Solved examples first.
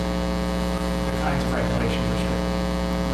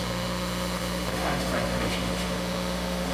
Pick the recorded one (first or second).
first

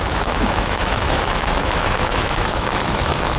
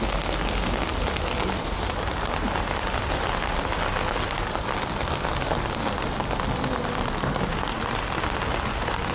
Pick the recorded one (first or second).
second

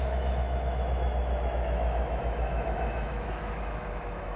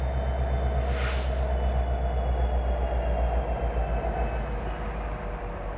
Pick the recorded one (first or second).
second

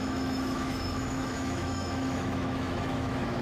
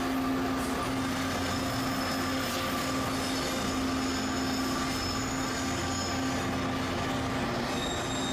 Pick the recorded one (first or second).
second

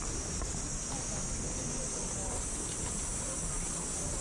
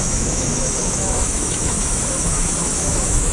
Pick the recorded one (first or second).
first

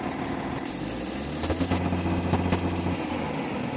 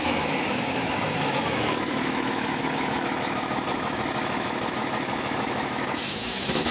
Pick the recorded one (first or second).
first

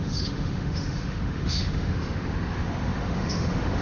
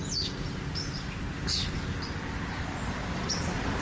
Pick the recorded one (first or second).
second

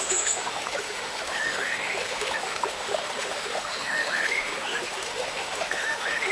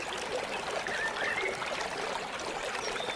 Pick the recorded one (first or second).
second